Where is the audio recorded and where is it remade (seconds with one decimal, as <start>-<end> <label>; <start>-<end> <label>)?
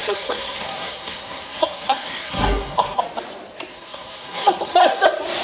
0.0-3.0 remade; 3.0-3.7 recorded; 3.7-5.0 remade; 5.0-5.4 recorded